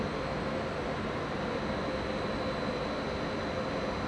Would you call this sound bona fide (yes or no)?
yes